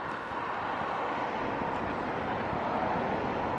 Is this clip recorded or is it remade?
recorded